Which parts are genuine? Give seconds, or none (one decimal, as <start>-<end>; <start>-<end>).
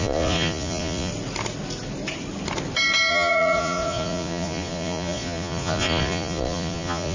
1.1-3.1